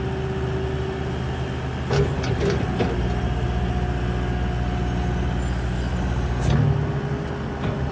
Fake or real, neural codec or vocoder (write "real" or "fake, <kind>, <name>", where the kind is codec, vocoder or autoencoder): real